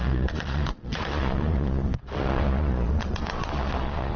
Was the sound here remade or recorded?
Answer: remade